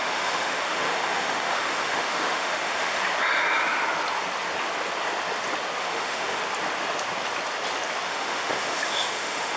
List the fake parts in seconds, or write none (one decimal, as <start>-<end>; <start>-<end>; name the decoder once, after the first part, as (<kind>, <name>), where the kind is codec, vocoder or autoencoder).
0.0-3.0 (autoencoder, DAC-VAE); 5.8-6.4; 8.1-9.6